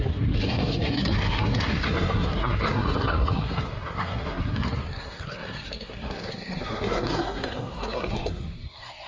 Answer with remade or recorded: remade